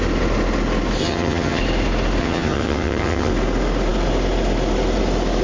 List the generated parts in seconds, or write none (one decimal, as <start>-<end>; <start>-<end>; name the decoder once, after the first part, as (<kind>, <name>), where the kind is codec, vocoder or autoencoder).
1.0-1.6 (vocoder, HiFi-GAN); 2.2-3.3